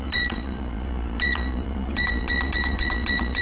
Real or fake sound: fake